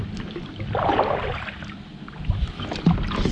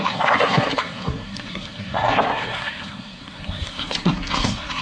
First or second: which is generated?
second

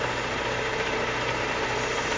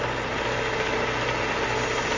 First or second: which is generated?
first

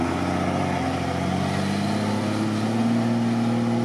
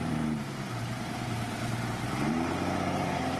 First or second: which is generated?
second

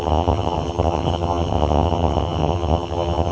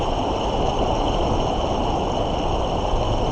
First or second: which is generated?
first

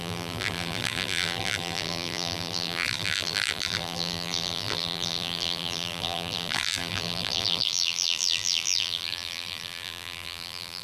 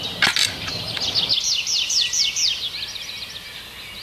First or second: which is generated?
first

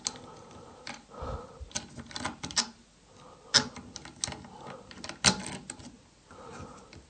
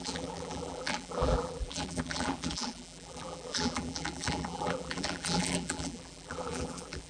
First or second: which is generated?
second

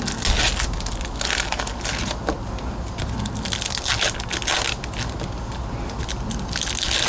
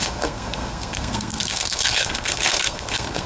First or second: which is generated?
second